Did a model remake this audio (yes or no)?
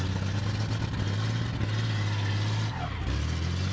no